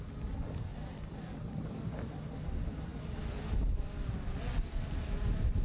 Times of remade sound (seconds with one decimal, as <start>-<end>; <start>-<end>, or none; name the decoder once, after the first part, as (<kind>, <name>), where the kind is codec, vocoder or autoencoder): none

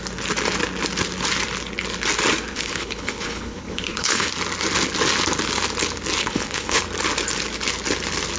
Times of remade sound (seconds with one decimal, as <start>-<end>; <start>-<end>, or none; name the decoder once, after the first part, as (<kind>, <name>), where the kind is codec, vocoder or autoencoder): 2.5-4.3 (codec, HILCodec); 6.2-6.8

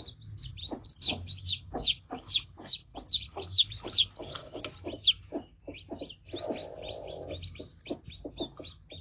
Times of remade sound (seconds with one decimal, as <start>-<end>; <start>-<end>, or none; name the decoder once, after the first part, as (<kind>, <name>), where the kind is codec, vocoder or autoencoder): 0.6-4.6 (codec, HILCodec)

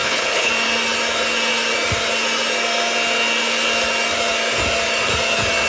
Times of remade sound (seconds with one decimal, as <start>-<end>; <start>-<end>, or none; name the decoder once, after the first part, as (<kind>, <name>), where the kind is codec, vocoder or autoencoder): 0.0-0.5 (codec, HILCodec)

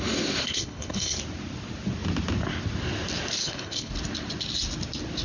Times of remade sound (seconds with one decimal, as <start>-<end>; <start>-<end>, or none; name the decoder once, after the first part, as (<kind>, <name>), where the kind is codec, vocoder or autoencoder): 0.4-1.2 (codec, HILCodec); 3.4-3.9

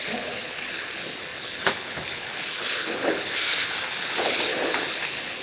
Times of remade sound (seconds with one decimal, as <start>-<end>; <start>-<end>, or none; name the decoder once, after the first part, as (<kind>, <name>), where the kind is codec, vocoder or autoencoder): 0.0-5.4 (codec, HILCodec)